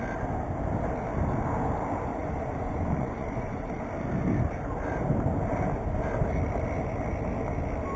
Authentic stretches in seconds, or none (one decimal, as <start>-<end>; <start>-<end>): 0.0-2.1; 3.8-8.0